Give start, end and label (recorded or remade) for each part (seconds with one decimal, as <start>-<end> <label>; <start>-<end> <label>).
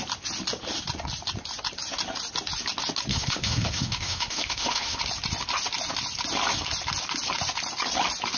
0.0-3.1 recorded; 3.1-5.0 remade; 5.0-8.4 recorded